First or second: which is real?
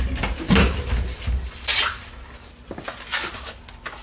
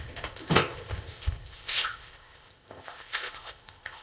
first